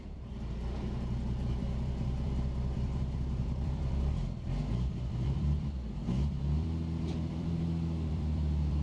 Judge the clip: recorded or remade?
remade